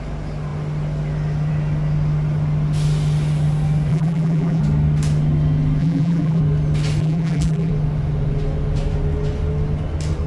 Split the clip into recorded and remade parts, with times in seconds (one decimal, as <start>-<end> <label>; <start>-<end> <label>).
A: 0.0-3.9 recorded; 3.9-4.6 remade; 4.6-5.8 recorded; 5.8-6.4 remade; 6.4-7.0 recorded; 7.0-7.7 remade; 7.7-10.3 recorded